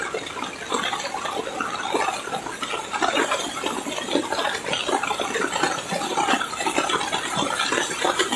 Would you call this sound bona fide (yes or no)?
yes